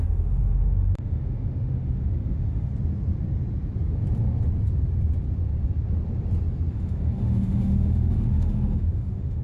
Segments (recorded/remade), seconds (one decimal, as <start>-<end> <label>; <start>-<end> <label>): 0.0-2.7 remade; 2.7-6.7 recorded; 6.7-9.4 remade